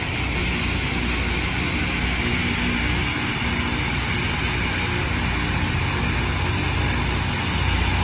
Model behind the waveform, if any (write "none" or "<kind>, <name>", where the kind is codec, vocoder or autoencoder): none